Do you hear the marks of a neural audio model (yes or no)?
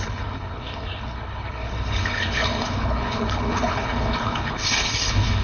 yes